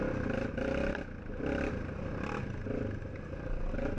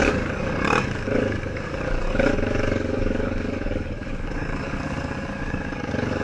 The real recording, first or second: first